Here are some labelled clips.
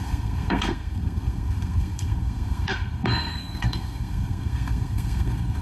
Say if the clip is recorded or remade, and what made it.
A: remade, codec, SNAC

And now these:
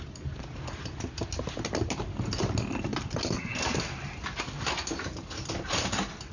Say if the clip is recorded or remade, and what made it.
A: recorded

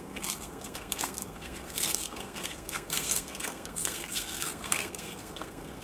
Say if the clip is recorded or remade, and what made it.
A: remade, codec, SNAC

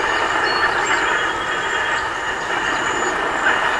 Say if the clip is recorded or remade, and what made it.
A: recorded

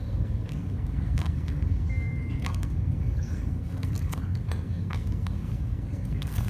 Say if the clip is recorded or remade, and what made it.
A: remade, codec, SNAC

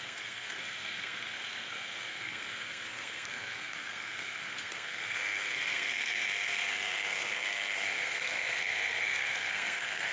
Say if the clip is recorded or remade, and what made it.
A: remade, codec, SNAC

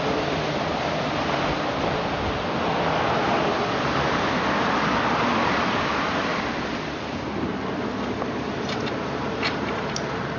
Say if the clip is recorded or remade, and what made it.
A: recorded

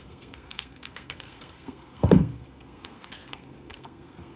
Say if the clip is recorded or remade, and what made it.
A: remade, codec, SNAC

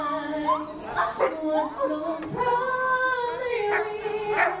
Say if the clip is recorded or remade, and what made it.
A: recorded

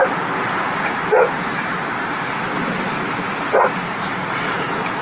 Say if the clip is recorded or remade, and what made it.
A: recorded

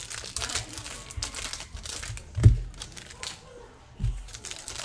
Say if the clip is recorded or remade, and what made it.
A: recorded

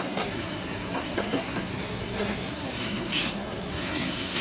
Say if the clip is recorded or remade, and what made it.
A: remade, codec, SNAC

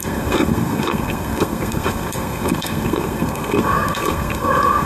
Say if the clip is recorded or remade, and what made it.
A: remade, codec, SNAC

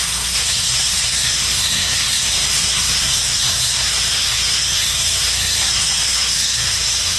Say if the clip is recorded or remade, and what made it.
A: remade, codec, SNAC